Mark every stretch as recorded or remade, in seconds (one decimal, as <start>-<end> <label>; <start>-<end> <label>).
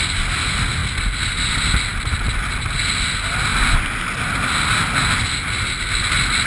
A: 0.0-6.5 recorded